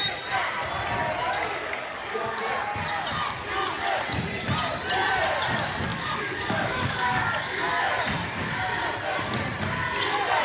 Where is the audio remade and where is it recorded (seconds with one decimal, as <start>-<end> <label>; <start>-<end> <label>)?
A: 0.0-1.6 recorded; 1.6-2.5 remade; 2.5-5.9 recorded; 5.9-7.9 remade; 7.9-10.4 recorded